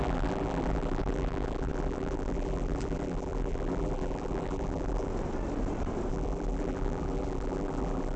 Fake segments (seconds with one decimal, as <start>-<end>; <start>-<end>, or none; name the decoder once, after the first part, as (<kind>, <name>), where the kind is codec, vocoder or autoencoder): 0.0-5.1 (vocoder, BigVGAN v2); 6.1-8.2